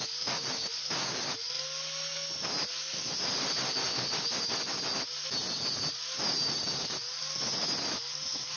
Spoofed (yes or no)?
no